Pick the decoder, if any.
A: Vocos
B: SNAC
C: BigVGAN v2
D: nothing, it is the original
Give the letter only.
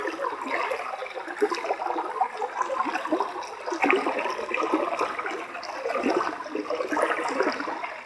D